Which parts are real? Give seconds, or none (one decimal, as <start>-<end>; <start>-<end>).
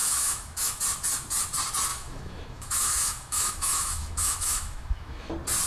0.8-1.9; 5.3-5.7